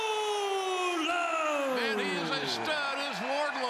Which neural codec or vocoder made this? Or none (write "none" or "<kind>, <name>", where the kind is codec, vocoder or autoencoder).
none